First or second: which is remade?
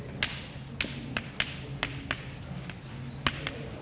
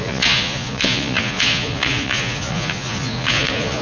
second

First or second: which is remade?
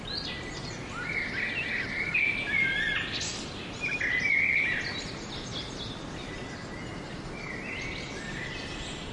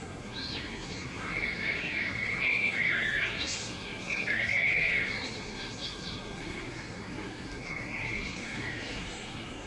second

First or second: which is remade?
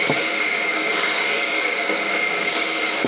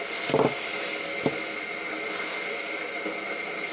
first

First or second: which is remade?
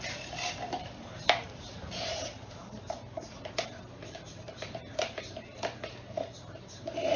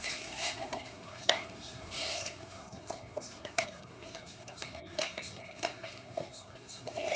second